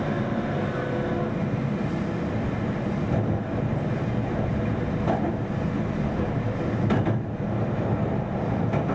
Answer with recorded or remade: recorded